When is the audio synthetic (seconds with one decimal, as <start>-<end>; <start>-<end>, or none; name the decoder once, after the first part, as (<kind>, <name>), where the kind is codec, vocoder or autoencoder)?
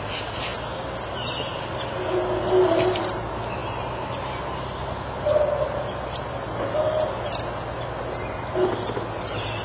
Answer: none